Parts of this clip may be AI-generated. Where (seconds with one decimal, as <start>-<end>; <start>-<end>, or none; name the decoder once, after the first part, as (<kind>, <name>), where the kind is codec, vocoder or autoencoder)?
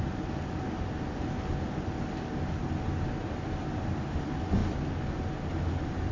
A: none